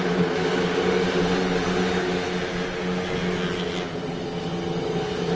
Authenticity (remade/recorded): recorded